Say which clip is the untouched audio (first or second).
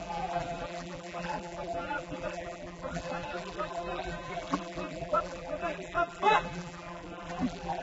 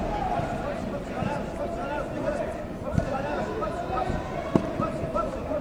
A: second